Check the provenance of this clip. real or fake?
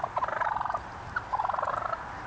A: real